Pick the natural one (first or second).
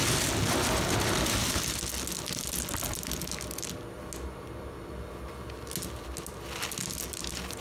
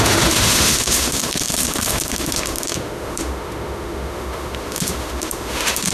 first